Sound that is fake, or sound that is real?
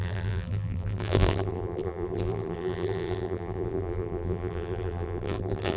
fake